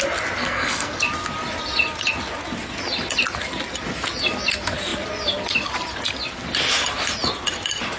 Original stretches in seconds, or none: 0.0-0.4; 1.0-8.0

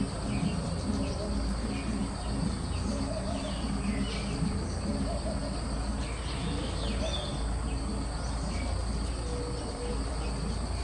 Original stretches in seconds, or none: 0.0-10.8

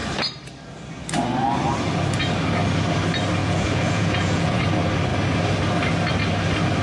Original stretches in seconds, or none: 0.0-3.4; 4.6-6.8

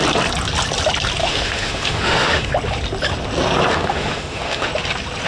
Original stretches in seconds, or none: 0.0-1.2; 2.5-3.7; 4.7-5.3